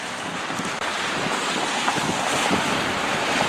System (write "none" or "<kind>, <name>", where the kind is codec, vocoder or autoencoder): none